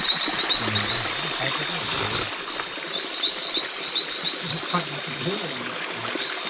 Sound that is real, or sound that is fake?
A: real